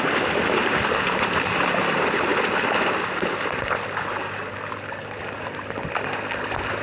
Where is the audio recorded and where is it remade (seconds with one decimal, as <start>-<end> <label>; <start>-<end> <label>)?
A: 0.0-6.8 recorded